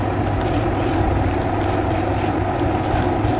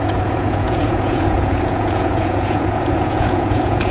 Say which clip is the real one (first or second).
first